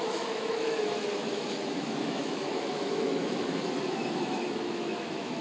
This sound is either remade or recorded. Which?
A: remade